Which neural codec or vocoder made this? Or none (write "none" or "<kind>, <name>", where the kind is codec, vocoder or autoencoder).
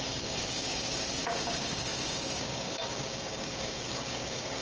codec, DAC